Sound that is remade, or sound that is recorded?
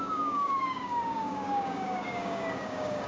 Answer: remade